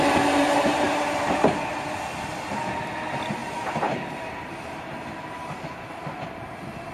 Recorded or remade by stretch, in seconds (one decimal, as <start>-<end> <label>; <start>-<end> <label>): 0.0-0.4 recorded; 0.4-1.0 remade; 1.0-3.4 recorded; 3.4-5.6 remade; 5.6-6.9 recorded

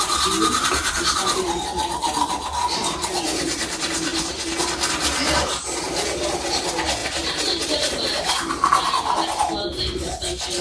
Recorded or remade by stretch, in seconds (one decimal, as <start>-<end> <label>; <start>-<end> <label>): 0.0-4.1 recorded; 4.1-4.6 remade; 4.6-7.0 recorded; 7.0-8.5 remade; 8.5-10.6 recorded

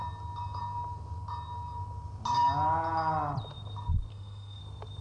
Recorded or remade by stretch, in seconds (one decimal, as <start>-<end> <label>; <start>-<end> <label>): 0.0-4.1 recorded; 4.1-4.6 remade; 4.6-5.0 recorded